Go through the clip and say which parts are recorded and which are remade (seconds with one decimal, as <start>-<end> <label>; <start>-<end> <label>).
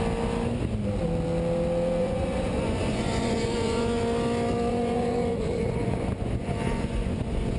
0.0-2.0 recorded; 2.0-4.0 remade; 4.0-4.7 recorded; 4.7-7.6 remade